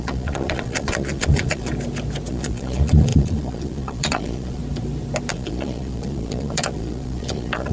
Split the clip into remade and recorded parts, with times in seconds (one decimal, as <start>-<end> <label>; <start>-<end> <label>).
0.0-1.7 remade; 1.7-2.3 recorded; 2.3-4.6 remade; 4.6-5.3 recorded; 5.3-7.7 remade